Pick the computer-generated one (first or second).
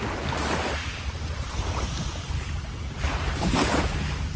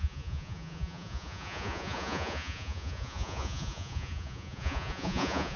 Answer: second